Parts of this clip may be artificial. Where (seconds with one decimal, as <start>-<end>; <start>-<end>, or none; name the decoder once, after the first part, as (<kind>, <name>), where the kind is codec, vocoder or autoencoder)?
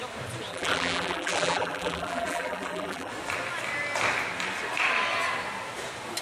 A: 0.5-3.1 (vocoder, BigVGAN v2)